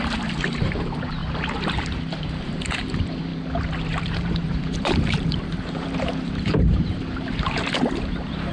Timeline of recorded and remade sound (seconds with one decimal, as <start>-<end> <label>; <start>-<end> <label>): 0.0-1.2 remade; 1.2-1.8 recorded; 1.8-3.3 remade; 3.3-4.0 recorded; 4.0-8.5 remade